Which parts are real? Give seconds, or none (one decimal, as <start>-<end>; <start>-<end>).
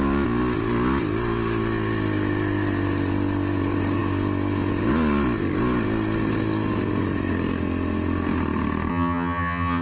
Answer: 0.0-8.9